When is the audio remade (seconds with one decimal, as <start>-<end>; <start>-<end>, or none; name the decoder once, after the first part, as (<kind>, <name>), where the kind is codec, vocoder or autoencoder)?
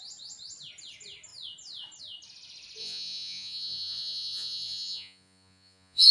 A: 2.8-6.1 (vocoder, Vocos)